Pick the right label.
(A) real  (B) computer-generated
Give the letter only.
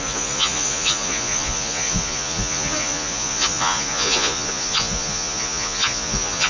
B